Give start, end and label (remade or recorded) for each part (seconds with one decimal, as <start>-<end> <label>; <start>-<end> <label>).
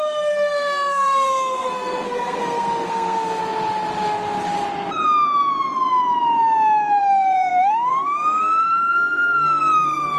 0.0-3.4 remade; 3.4-7.0 recorded; 7.0-10.2 remade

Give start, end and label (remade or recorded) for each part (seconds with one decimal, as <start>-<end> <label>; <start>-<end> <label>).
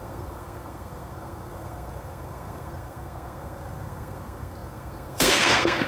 0.0-5.9 remade